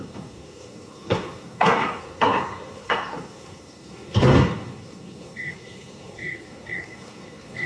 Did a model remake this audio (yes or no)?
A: yes